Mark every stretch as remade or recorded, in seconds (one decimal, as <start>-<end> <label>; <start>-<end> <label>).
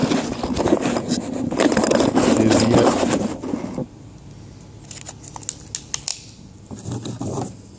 0.0-7.8 recorded